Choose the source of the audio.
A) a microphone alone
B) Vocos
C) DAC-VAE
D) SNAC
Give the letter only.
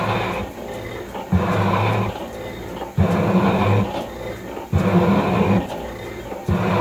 A